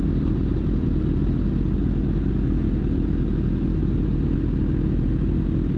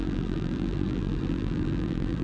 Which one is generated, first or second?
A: second